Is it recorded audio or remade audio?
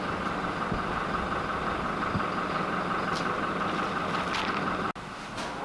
recorded